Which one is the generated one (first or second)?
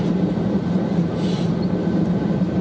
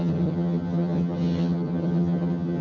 second